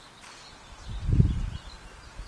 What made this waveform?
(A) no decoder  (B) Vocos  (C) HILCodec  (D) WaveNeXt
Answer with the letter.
A